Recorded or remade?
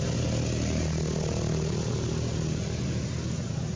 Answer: recorded